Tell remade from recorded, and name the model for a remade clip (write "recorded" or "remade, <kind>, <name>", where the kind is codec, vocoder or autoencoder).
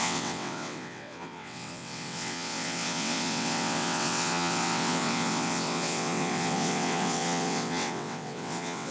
remade, vocoder, WaveNeXt